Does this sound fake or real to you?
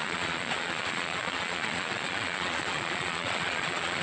fake